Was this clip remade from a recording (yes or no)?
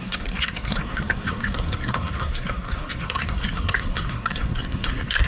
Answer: yes